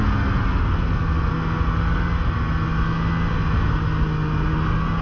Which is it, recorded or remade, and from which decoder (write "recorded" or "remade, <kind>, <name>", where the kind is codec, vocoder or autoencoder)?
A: recorded